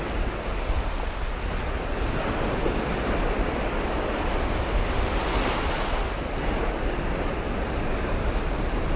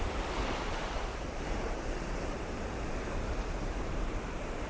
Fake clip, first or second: second